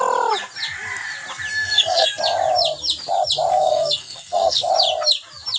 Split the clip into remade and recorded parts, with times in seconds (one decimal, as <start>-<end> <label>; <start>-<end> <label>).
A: 0.0-1.5 recorded; 1.5-2.2 remade; 2.2-3.5 recorded; 3.5-4.7 remade; 4.7-5.6 recorded